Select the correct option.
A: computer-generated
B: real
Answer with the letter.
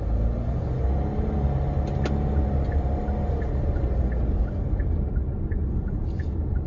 B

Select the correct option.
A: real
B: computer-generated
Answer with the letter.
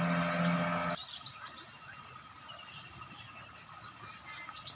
A